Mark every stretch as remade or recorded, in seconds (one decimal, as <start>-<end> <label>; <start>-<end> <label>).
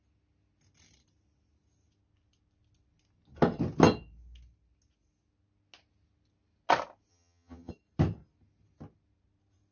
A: 0.0-7.1 recorded; 7.1-7.7 remade; 7.7-9.7 recorded